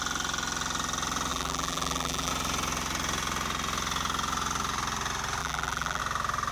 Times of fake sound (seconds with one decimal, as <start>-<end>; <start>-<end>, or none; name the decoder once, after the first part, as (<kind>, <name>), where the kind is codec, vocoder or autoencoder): 1.3-2.3 (vocoder, BigVGAN v2); 5.4-6.0